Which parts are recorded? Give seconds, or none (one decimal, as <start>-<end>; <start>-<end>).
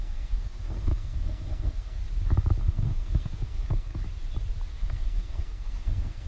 2.0-2.6; 4.0-4.7